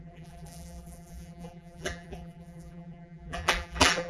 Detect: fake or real fake